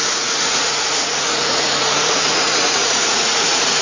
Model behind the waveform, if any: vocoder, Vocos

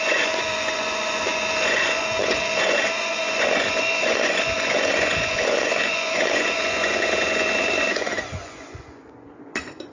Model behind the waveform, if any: vocoder, Vocos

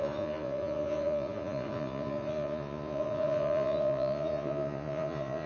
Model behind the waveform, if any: vocoder, Vocos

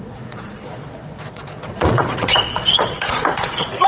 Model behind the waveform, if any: vocoder, Vocos